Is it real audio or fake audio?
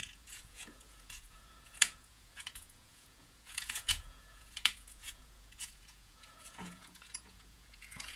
fake